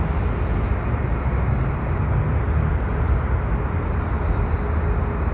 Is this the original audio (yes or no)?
yes